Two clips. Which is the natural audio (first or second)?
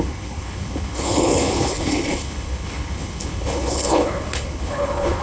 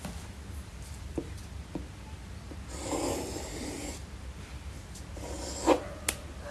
second